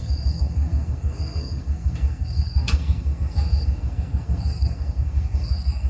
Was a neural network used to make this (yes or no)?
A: yes